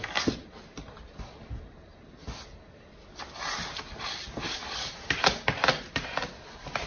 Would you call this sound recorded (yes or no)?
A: yes